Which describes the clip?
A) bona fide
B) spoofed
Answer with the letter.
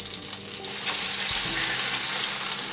A